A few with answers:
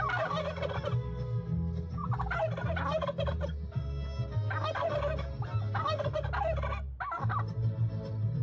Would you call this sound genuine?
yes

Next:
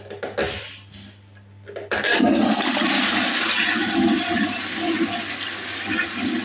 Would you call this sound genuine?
yes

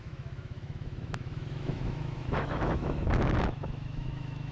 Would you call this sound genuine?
no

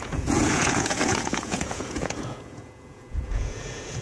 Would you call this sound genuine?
no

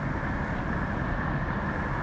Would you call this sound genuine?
yes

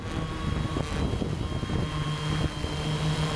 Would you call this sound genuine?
yes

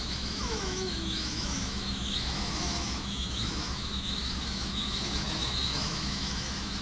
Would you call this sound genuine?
no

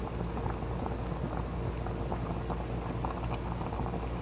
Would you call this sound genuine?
yes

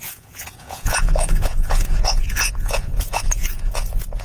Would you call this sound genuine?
no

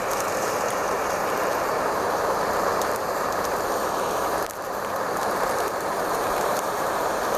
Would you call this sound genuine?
no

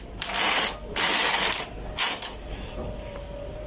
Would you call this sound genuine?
yes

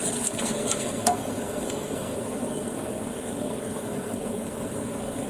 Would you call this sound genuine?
no